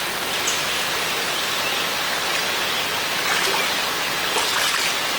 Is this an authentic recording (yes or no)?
yes